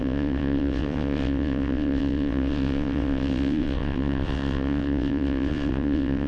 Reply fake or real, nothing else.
fake